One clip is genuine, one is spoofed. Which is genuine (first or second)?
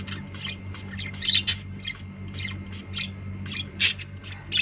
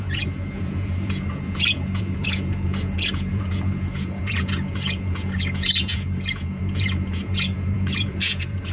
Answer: first